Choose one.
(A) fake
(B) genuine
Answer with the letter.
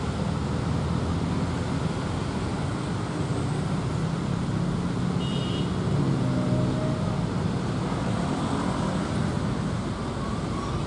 B